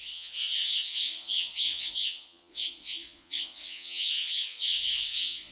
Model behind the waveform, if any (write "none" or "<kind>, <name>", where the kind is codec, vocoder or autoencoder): vocoder, Vocos